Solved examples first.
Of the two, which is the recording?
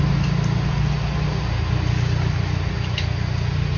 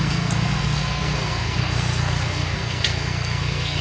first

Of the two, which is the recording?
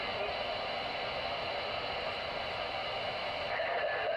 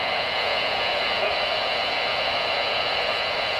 first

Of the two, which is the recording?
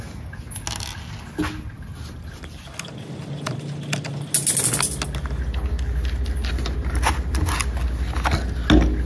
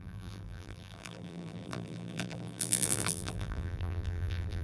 first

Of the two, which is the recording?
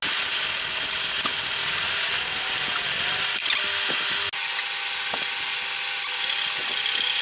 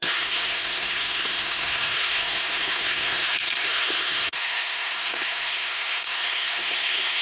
first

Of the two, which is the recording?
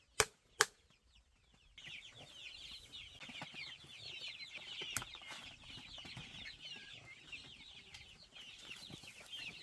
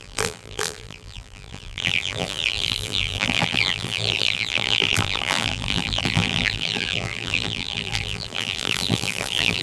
first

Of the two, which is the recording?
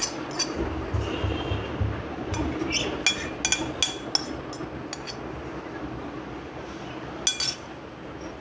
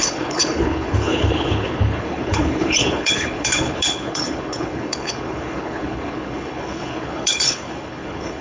first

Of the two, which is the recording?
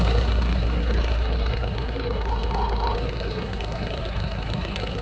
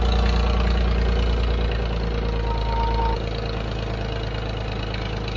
second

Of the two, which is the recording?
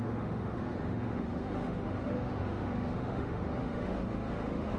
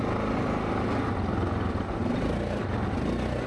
second